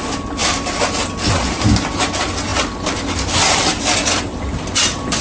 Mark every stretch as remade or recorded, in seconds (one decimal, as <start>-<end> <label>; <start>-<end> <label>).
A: 0.0-5.2 recorded